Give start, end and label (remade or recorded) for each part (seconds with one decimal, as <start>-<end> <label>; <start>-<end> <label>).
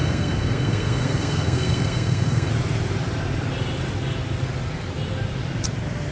0.0-2.5 remade; 2.5-6.1 recorded